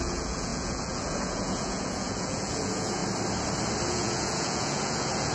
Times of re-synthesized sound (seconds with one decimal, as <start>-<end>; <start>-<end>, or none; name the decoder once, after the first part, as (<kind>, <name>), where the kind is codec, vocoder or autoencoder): 0.0-3.0 (vocoder, Vocos); 3.9-5.3